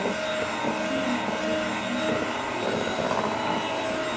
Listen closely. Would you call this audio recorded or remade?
recorded